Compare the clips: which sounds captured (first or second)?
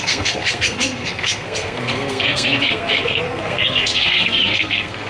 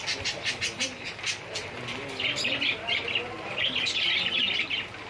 second